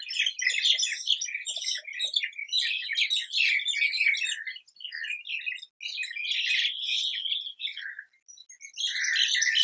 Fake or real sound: real